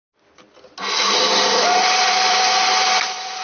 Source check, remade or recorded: recorded